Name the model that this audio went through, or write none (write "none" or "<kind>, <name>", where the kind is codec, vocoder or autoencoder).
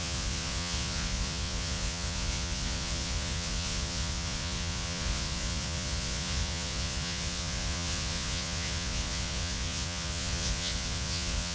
vocoder, Vocos